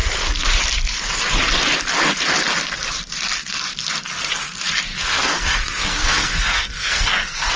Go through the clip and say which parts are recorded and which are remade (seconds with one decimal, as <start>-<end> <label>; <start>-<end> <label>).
0.0-4.9 recorded; 4.9-7.6 remade